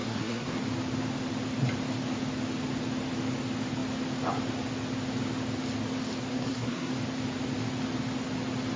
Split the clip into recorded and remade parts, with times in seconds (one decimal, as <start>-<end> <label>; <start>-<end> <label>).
0.0-0.6 remade; 0.6-6.3 recorded; 6.3-6.9 remade; 6.9-8.8 recorded